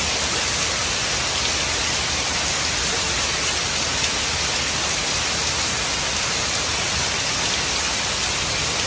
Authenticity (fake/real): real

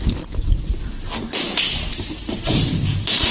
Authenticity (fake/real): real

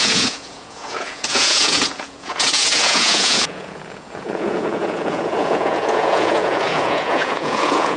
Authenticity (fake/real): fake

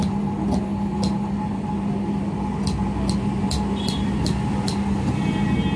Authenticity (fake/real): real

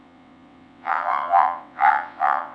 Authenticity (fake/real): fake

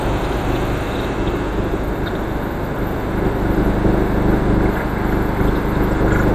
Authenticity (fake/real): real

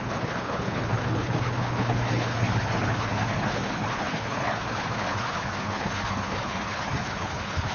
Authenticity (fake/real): fake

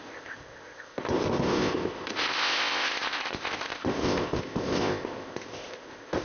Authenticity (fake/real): fake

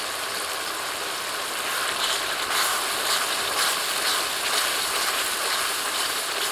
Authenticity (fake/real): real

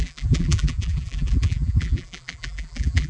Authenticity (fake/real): fake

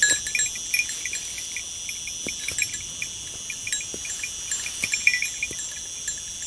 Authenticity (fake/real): real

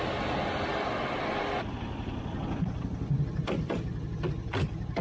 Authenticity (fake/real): real